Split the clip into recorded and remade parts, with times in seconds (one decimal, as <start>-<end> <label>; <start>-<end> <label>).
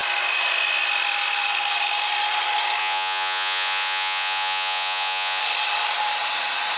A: 0.0-2.8 recorded; 2.8-5.4 remade; 5.4-6.8 recorded